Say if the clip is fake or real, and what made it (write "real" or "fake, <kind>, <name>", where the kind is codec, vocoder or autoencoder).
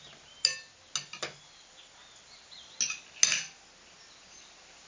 real